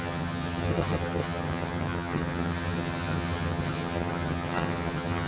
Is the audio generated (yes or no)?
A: yes